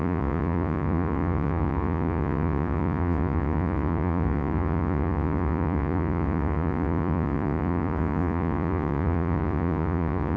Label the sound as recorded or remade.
remade